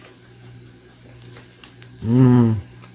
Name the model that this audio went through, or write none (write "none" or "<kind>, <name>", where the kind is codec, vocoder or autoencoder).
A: none